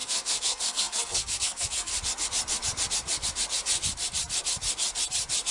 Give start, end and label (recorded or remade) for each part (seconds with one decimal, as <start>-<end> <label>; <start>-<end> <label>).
0.0-1.9 remade; 1.9-5.5 recorded